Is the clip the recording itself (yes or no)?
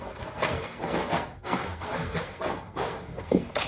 no